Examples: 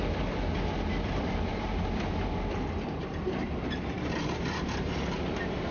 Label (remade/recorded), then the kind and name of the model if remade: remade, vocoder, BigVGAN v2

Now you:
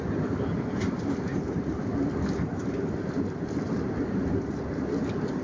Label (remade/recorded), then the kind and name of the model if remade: recorded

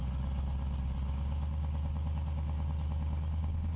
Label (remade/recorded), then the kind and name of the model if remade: recorded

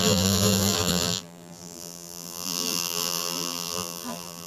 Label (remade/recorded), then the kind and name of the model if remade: remade, vocoder, BigVGAN v2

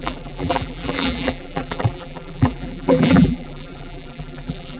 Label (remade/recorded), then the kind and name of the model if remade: remade, vocoder, BigVGAN v2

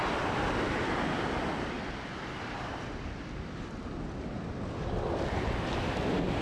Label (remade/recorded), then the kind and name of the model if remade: recorded